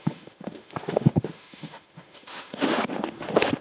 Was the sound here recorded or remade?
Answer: remade